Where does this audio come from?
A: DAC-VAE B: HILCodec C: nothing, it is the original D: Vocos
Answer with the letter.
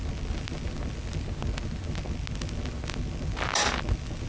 C